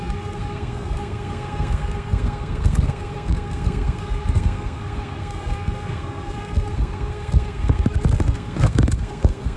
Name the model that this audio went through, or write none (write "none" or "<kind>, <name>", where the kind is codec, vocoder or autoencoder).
codec, SNAC